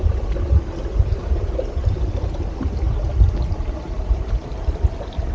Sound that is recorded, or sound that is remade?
recorded